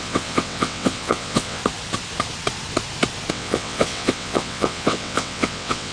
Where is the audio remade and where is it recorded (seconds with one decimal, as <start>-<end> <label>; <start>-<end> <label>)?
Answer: 0.0-1.6 remade; 1.6-3.3 recorded; 3.3-5.9 remade